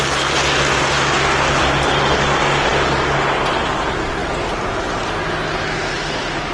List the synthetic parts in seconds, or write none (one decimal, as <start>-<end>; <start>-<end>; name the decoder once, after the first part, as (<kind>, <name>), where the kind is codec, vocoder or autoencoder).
none